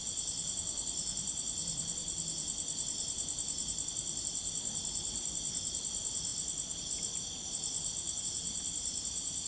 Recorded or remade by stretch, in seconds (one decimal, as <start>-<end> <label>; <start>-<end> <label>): 0.0-9.5 recorded